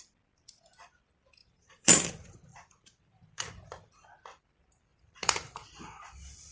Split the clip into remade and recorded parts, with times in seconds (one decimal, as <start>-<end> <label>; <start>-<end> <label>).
0.0-1.4 recorded; 1.4-2.1 remade; 2.1-2.5 recorded; 2.5-3.5 remade; 3.5-4.9 recorded; 4.9-6.1 remade; 6.1-6.5 recorded